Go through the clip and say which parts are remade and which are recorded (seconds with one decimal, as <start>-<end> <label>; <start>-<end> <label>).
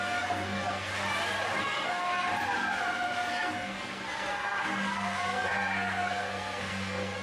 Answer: 0.0-0.9 remade; 0.9-1.6 recorded; 1.6-2.3 remade; 2.3-3.3 recorded; 3.3-7.2 remade